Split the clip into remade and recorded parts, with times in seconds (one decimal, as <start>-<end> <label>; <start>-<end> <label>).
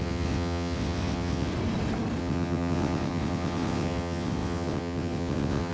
0.0-1.5 remade; 1.5-2.2 recorded; 2.2-5.7 remade